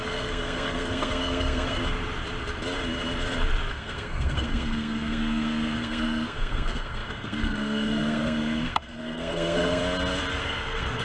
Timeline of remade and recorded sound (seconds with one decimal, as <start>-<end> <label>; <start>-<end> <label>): 0.0-1.8 remade; 1.8-3.7 recorded; 3.7-9.8 remade; 9.8-10.4 recorded; 10.4-11.0 remade